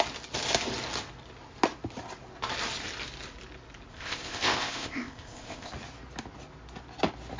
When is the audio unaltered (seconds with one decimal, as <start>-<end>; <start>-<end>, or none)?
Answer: 0.0-3.9; 5.7-7.4